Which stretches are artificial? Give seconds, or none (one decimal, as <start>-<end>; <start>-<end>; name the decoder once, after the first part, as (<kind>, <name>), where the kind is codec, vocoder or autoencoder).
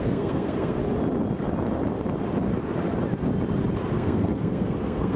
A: 0.0-0.8 (codec, SNAC); 3.9-5.2